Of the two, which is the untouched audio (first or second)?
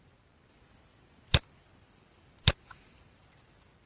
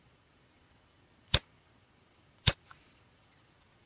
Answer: first